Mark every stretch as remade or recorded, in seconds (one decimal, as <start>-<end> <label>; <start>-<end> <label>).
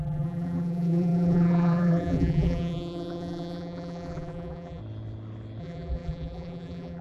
0.0-4.8 remade; 4.8-5.6 recorded; 5.6-7.0 remade